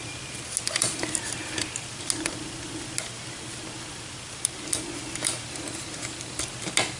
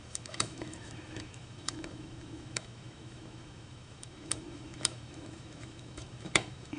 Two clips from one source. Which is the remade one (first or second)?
second